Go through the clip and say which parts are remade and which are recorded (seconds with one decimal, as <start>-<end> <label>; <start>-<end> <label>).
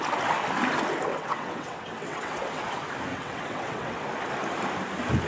0.0-1.1 recorded; 1.1-2.7 remade; 2.7-3.1 recorded; 3.1-4.0 remade; 4.0-5.3 recorded